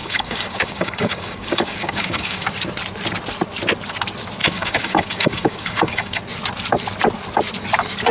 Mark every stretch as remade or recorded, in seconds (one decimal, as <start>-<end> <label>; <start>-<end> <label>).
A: 0.0-2.5 remade; 2.5-4.4 recorded; 4.4-6.2 remade; 6.2-8.1 recorded